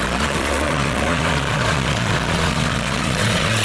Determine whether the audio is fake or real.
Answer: fake